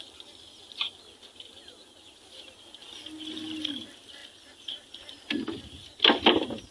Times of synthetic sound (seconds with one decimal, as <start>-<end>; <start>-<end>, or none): none